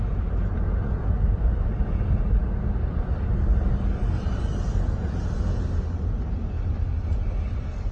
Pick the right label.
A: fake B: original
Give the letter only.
B